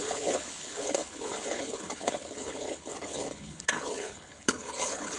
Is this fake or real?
fake